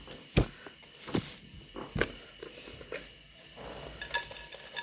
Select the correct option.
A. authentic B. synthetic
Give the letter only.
A